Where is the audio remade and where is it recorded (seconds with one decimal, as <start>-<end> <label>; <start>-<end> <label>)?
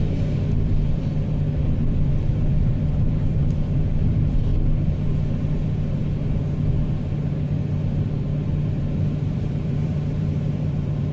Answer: 0.0-4.5 remade; 4.5-5.4 recorded; 5.4-6.0 remade; 6.0-7.2 recorded; 7.2-11.1 remade